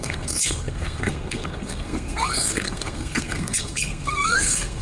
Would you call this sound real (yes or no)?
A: no